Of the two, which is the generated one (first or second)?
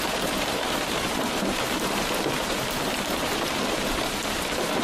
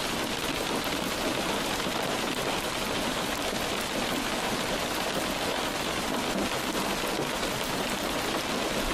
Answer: first